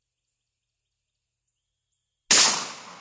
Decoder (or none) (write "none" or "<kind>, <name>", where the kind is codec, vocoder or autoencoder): none